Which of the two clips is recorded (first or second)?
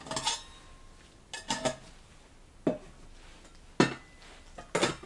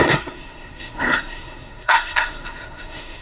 first